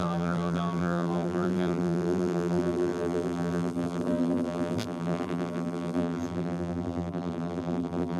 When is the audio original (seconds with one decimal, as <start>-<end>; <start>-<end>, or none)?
none